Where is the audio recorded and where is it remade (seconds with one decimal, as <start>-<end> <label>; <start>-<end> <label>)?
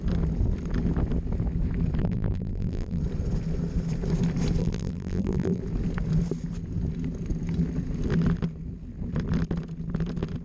0.0-2.0 recorded; 2.0-3.0 remade; 3.0-4.6 recorded; 4.6-5.6 remade; 5.6-10.4 recorded